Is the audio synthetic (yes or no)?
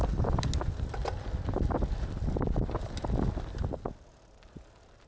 no